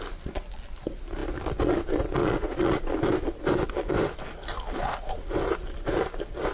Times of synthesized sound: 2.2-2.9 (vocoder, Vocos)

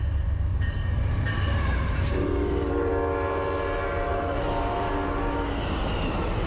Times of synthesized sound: 0.5-2.9 (vocoder, BigVGAN v2); 4.1-4.9

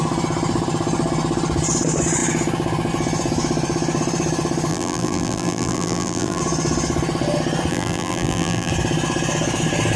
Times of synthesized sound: 4.7-6.4 (vocoder, BigVGAN v2); 7.7-8.7

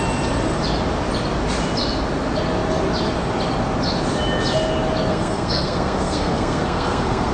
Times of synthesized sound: 5.1-7.3 (codec, SNAC)

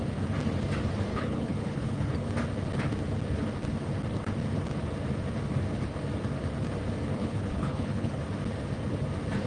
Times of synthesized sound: 1.1-2.3 (codec, HILCodec); 7.1-8.2